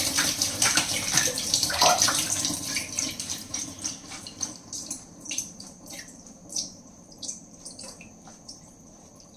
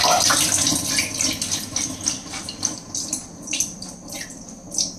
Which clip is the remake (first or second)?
first